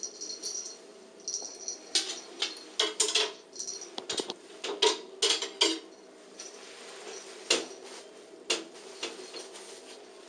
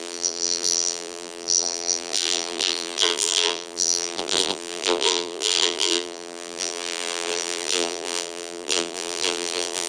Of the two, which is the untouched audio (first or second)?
first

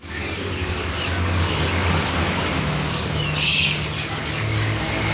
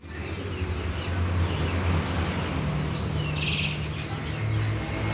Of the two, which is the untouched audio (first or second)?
second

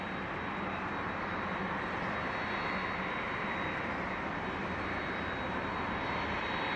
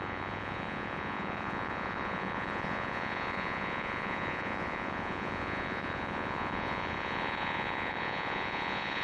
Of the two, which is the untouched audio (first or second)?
first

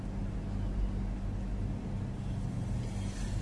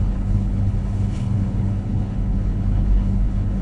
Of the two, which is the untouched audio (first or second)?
first